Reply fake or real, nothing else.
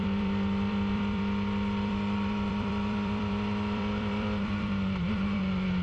fake